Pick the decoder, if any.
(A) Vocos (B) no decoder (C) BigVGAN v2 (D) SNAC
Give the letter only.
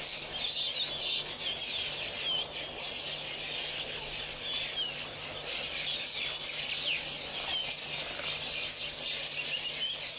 B